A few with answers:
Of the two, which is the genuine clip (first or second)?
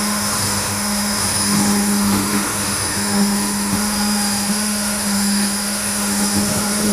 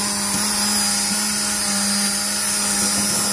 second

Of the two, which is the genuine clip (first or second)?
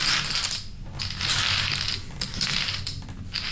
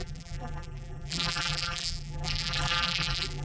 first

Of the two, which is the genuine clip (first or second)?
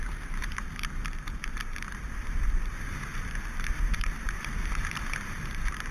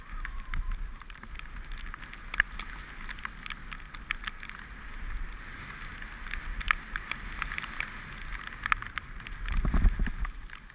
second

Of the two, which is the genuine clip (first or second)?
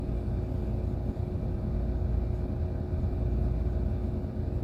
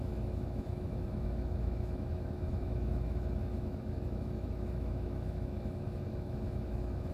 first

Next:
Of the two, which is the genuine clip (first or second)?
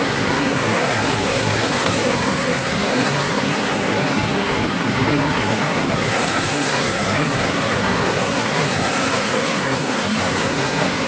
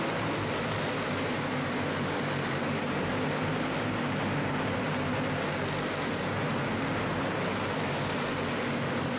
second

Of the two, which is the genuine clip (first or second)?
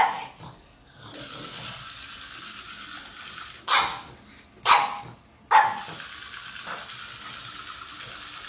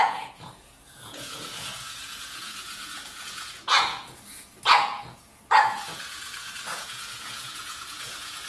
first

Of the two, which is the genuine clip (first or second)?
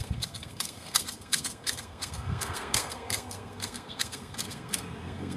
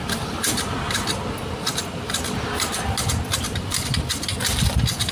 second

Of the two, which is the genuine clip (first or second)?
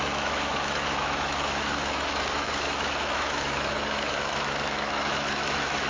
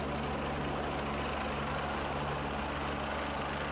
second